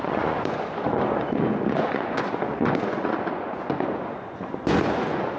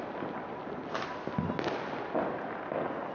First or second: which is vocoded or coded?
first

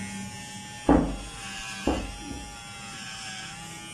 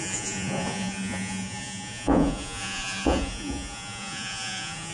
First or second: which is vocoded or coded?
second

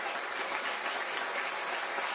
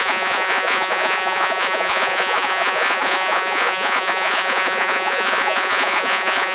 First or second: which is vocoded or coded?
second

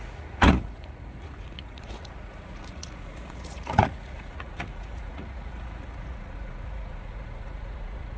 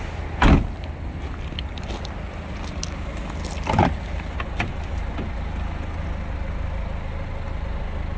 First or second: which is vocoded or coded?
first